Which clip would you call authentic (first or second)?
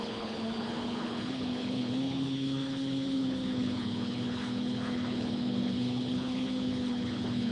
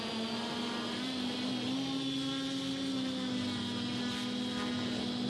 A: second